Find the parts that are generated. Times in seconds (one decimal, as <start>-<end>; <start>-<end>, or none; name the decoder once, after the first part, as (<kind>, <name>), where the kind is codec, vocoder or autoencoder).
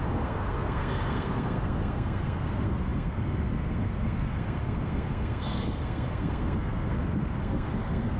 0.0-8.2 (codec, SNAC)